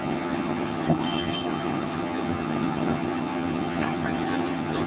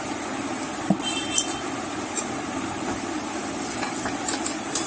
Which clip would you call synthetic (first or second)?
first